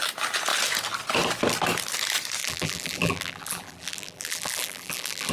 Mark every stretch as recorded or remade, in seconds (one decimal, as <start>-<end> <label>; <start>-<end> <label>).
0.0-2.4 recorded; 2.4-5.3 remade